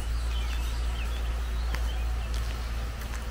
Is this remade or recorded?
recorded